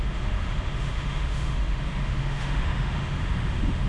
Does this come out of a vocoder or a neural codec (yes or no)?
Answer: yes